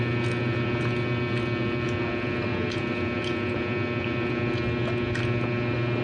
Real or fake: real